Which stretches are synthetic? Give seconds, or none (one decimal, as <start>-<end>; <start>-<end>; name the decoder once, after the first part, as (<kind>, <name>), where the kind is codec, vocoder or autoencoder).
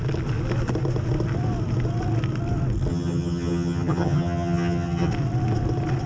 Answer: 2.9-5.1 (vocoder, HiFi-GAN)